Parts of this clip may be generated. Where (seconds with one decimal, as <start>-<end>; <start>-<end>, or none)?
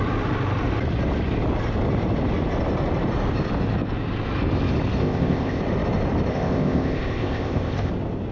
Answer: 5.0-5.6; 6.3-7.9